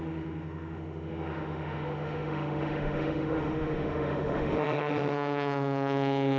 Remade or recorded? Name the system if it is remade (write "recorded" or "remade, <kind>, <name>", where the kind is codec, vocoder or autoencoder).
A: remade, autoencoder, DAC-VAE